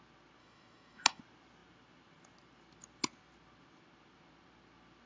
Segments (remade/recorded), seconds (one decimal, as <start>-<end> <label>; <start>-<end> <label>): 0.0-0.4 recorded; 0.4-1.2 remade; 1.2-5.1 recorded

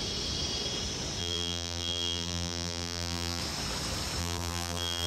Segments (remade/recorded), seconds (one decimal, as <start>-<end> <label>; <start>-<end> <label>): 0.0-1.2 recorded; 1.2-3.4 remade; 3.4-4.2 recorded; 4.2-5.1 remade

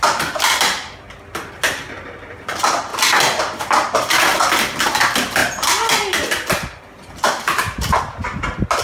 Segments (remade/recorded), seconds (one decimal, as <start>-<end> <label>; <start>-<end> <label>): 0.0-5.4 recorded; 5.4-8.0 remade; 8.0-8.8 recorded

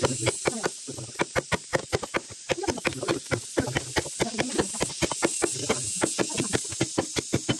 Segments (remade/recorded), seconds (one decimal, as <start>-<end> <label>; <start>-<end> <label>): 0.0-5.9 recorded; 5.9-6.5 remade; 6.5-7.6 recorded

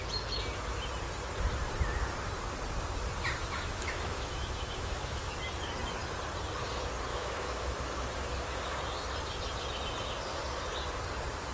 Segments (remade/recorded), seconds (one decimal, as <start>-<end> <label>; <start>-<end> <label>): 0.0-3.4 recorded; 3.4-5.3 remade; 5.3-7.1 recorded; 7.1-8.8 remade; 8.8-11.5 recorded